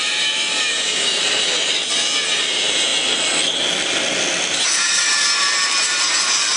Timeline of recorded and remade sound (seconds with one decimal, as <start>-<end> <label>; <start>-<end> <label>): 0.0-2.9 remade; 2.9-4.5 recorded; 4.5-6.6 remade